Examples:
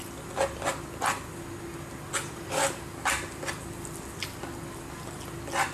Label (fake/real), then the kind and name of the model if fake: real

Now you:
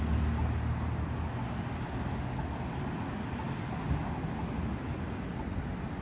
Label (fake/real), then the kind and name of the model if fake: real